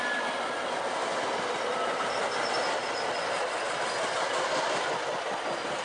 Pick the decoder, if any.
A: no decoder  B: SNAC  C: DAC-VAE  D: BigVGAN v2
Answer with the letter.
A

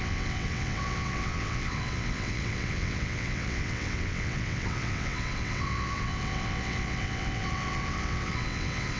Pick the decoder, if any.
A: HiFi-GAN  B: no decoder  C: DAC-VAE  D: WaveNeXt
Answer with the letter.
D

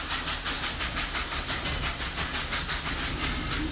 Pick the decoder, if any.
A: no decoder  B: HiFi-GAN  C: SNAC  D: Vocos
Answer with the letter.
A